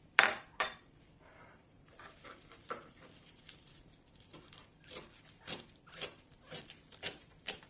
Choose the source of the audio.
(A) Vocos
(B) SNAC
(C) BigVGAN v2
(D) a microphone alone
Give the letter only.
C